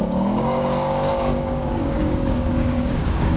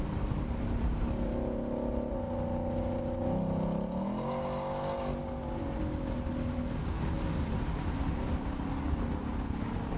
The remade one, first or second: first